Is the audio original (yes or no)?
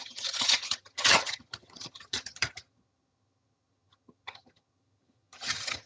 no